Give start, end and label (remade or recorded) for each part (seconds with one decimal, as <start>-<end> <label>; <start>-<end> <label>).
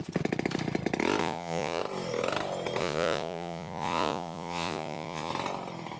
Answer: 0.0-1.2 recorded; 1.2-1.8 remade; 1.8-2.8 recorded; 2.8-5.3 remade; 5.3-6.0 recorded